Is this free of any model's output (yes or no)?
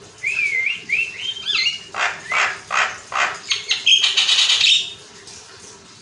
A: yes